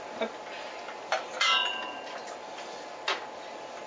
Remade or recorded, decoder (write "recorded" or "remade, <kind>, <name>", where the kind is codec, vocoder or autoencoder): recorded